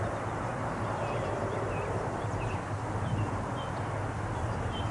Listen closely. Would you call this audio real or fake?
real